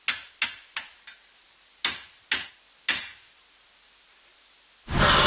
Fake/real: real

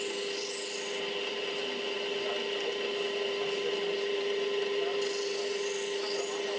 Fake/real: real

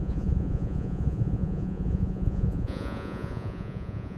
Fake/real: fake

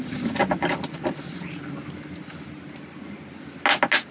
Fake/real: real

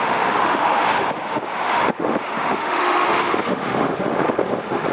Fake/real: fake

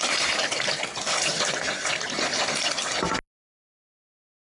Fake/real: real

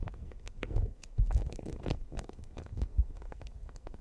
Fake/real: fake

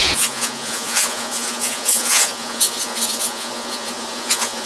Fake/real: fake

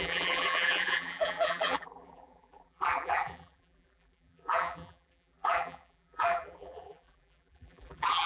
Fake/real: fake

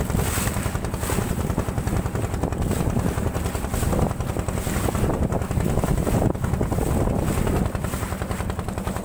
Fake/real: real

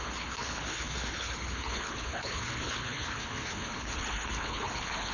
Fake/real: fake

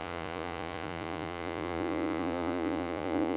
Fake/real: fake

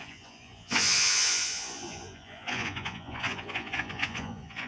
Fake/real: fake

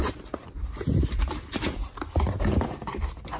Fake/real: fake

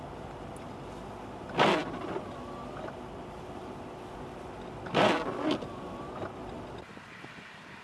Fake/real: real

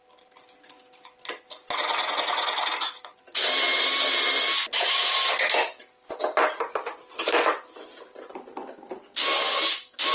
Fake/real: real